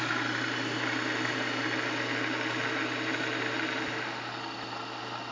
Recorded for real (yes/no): yes